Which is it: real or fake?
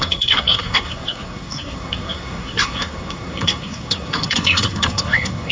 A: fake